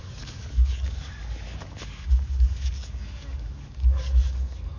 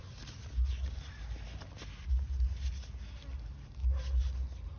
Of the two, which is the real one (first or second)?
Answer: second